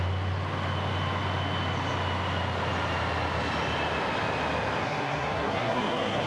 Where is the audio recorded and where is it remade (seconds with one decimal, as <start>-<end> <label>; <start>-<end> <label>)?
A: 0.0-4.8 recorded; 4.8-6.3 remade

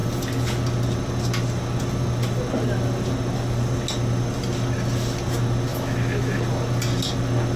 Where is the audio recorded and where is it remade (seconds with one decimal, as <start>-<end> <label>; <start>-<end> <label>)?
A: 0.0-5.7 recorded; 5.7-6.4 remade; 6.4-7.6 recorded

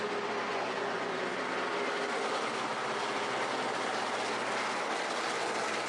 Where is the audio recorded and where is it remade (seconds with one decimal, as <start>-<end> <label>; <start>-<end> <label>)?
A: 0.0-0.5 recorded; 0.5-1.2 remade; 1.2-5.9 recorded

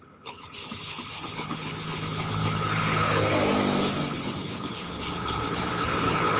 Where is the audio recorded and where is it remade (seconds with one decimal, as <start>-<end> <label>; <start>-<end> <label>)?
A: 0.0-3.3 remade; 3.3-3.9 recorded; 3.9-6.4 remade

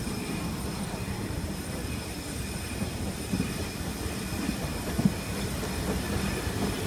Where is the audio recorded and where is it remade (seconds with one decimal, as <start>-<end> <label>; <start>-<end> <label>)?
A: 0.0-3.6 remade; 3.6-6.9 recorded